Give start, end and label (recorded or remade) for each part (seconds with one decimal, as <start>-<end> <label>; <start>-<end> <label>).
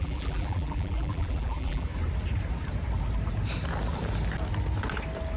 0.0-1.9 remade; 1.9-5.4 recorded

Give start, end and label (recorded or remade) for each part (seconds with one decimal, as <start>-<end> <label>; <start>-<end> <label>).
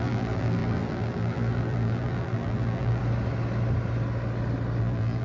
0.0-3.0 remade; 3.0-4.8 recorded; 4.8-5.2 remade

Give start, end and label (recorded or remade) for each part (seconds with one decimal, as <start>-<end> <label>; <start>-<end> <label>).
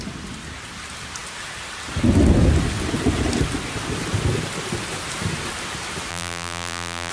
0.0-6.1 recorded; 6.1-7.1 remade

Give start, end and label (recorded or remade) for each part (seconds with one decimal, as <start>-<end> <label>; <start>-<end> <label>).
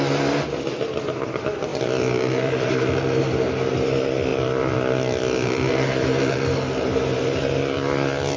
0.0-1.7 recorded; 1.7-3.2 remade; 3.2-4.3 recorded; 4.3-7.4 remade; 7.4-8.4 recorded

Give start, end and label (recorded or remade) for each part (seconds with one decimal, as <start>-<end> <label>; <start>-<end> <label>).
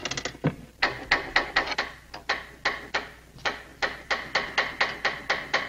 0.0-5.7 recorded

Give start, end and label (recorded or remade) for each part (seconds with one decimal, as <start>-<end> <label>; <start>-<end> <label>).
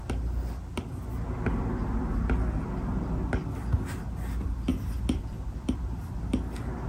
0.0-4.7 recorded; 4.7-6.1 remade; 6.1-6.9 recorded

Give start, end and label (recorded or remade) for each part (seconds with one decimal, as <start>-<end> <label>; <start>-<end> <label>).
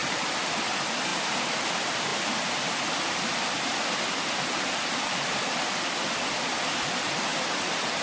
0.0-0.6 remade; 0.6-1.1 recorded; 1.1-1.6 remade; 1.6-8.0 recorded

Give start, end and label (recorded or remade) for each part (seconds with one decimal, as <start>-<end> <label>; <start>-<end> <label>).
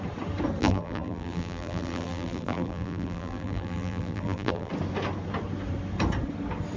0.0-0.6 recorded; 0.6-4.7 remade; 4.7-6.8 recorded